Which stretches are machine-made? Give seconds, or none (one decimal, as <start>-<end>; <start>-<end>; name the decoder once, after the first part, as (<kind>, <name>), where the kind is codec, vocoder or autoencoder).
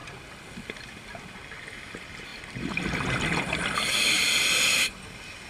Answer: none